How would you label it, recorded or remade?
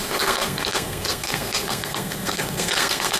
remade